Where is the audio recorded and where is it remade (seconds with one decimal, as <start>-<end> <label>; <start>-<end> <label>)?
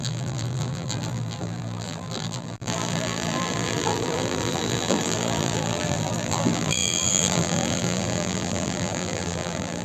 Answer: 0.0-9.8 remade